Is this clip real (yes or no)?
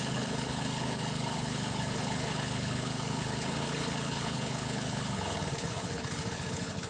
no